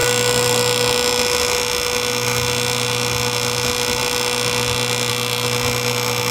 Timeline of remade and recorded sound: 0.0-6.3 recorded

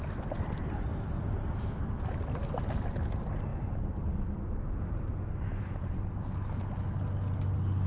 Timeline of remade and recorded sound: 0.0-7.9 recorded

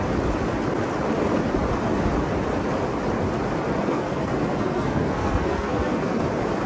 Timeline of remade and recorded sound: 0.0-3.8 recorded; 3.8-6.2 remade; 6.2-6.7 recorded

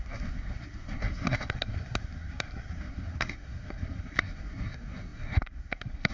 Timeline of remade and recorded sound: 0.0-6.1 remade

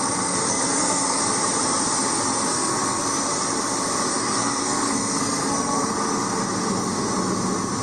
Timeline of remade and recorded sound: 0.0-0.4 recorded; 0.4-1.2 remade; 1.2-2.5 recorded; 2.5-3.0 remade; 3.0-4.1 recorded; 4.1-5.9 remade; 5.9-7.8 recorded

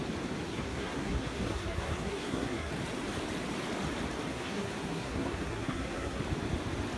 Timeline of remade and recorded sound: 0.0-0.5 recorded; 0.5-2.7 remade; 2.7-4.3 recorded; 4.3-6.2 remade; 6.2-7.0 recorded